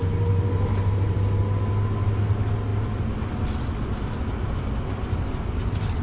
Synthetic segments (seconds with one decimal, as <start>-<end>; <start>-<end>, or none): none